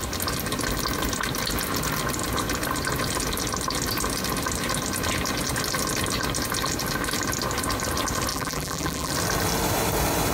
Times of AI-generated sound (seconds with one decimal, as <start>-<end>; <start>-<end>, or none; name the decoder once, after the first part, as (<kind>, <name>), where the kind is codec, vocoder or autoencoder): 8.3-9.1 (vocoder, BigVGAN v2)

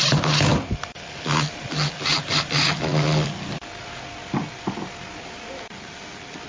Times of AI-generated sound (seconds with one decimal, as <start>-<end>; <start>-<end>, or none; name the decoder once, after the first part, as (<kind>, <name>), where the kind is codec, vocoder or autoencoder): none